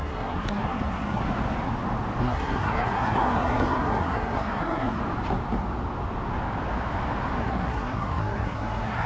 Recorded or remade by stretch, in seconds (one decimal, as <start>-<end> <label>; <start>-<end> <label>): 0.0-1.2 remade; 1.2-2.2 recorded; 2.2-5.0 remade; 5.0-7.4 recorded; 7.4-9.1 remade